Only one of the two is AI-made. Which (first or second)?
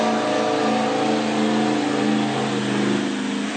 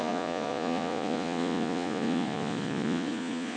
second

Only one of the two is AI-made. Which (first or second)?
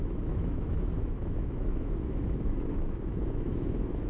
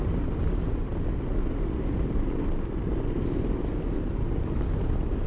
first